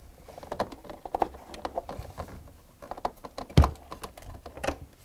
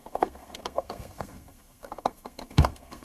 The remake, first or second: second